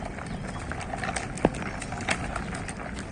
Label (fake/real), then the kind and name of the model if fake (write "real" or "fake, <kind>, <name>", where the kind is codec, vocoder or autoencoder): real